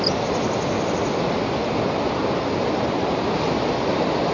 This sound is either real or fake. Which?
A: real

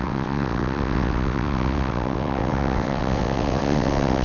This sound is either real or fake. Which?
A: fake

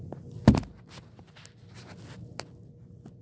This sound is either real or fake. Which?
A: real